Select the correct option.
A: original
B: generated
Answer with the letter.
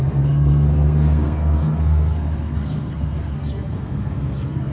B